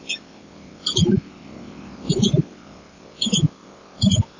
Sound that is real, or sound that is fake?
real